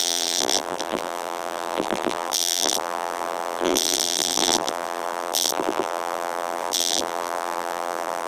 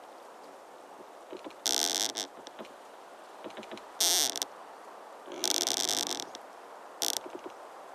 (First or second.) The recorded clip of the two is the second